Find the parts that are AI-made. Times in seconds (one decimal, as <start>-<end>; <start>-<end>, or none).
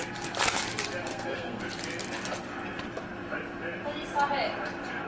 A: 1.1-1.6